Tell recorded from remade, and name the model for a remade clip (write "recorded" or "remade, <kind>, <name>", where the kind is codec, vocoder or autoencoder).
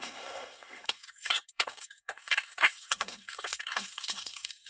remade, codec, SNAC